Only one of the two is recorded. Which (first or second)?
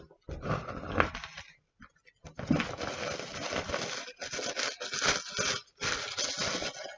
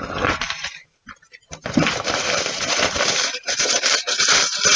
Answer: first